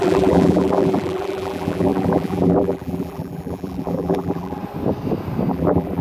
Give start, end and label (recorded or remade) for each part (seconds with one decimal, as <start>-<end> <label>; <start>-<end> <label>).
0.0-4.6 remade; 4.6-5.5 recorded; 5.5-6.0 remade